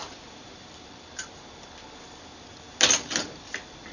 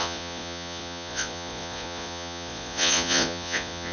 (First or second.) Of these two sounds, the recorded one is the first